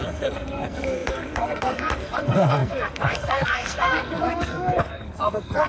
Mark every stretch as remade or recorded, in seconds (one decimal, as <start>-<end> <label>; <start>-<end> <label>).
0.0-5.7 remade